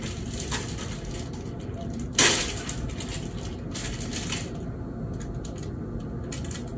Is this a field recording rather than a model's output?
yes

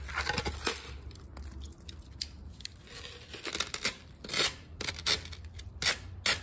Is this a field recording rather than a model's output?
yes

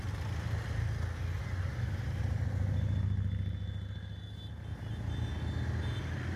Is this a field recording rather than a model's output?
yes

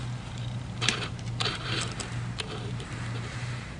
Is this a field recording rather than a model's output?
no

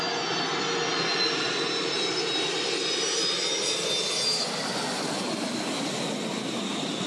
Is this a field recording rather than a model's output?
yes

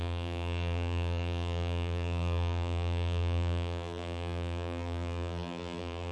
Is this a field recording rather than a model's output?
no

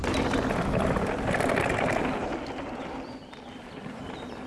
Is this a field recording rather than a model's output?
yes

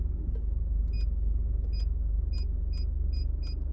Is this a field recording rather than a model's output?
yes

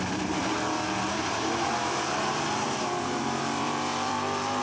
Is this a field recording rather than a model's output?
no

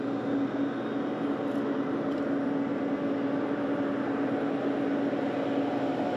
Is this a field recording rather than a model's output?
yes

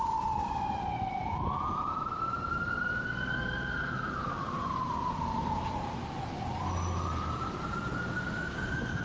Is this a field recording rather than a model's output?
no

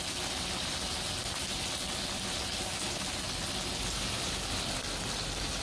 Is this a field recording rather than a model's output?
yes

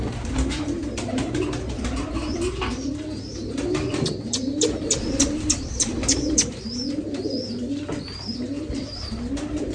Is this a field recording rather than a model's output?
no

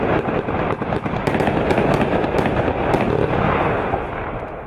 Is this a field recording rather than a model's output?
yes